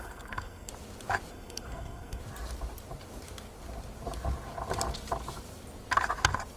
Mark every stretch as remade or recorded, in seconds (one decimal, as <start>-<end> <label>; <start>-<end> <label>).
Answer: 0.0-0.7 remade; 0.7-1.3 recorded; 1.3-2.2 remade; 2.2-6.6 recorded